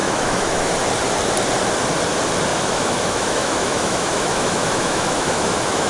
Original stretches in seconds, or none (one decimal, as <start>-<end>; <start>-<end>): 0.7-2.5